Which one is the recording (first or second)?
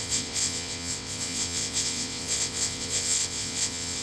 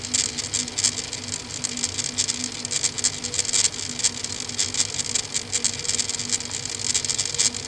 second